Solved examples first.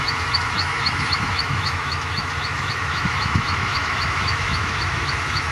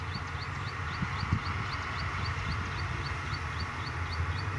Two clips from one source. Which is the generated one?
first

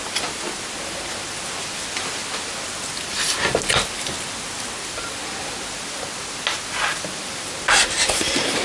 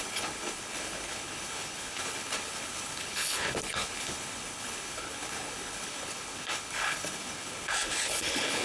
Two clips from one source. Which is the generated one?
second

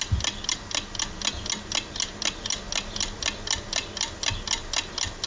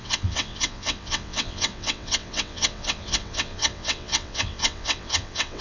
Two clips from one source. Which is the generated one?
second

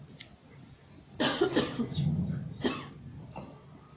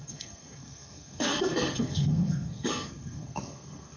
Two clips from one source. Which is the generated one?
second